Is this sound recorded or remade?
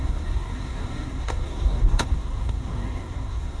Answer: remade